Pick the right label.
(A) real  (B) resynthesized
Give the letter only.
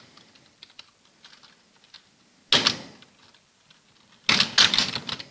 A